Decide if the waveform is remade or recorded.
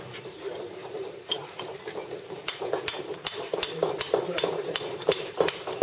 remade